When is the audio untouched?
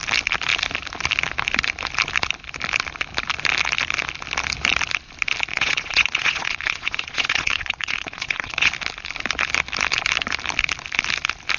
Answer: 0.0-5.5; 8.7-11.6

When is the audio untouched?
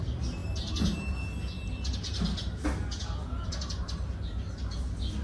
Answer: 0.0-5.2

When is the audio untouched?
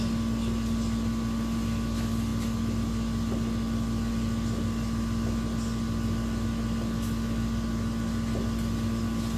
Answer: 0.0-9.4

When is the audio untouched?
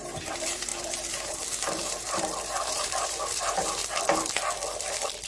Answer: 3.8-5.3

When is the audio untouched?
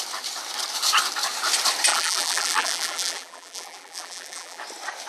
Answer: 0.0-1.9; 4.6-5.1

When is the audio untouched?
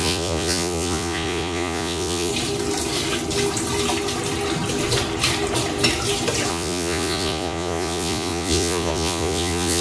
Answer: 2.3-6.5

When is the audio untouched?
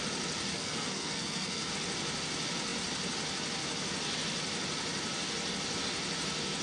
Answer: 0.0-0.5; 1.7-6.6